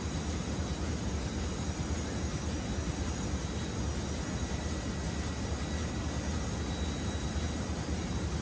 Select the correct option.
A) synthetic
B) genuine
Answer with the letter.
B